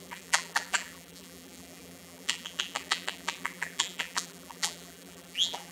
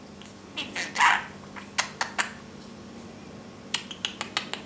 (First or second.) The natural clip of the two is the second